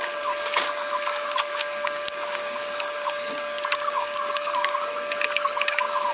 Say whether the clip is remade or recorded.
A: remade